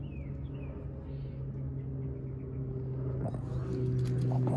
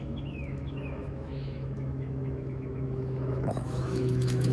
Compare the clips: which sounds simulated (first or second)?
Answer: second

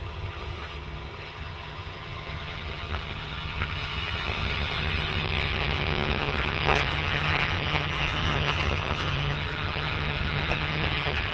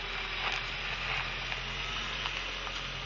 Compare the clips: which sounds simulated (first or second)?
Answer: first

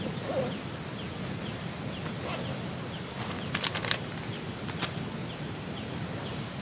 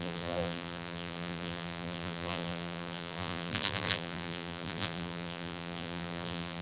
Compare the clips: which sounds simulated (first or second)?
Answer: second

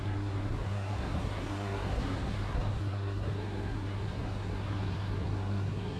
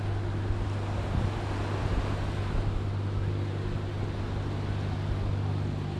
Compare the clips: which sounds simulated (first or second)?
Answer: first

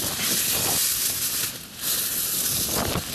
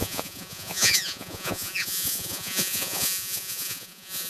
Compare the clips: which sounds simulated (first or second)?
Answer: second